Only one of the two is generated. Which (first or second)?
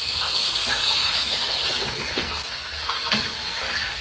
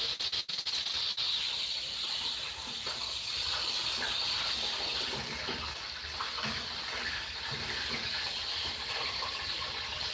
first